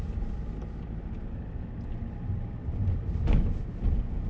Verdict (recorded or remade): recorded